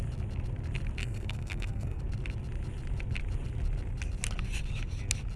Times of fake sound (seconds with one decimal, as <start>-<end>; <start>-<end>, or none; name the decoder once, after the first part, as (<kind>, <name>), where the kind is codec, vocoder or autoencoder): 1.0-2.0 (codec, SNAC)